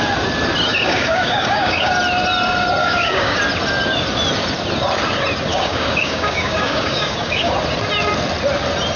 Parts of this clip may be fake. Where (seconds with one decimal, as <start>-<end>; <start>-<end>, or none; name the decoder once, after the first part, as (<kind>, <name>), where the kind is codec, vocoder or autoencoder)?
0.7-1.9 (codec, DAC); 2.8-3.4; 5.5-7.5